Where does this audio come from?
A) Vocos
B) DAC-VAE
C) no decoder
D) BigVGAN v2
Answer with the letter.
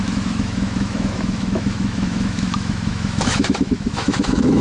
B